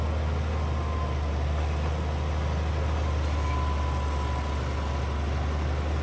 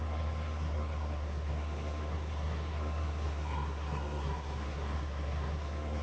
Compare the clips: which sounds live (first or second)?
first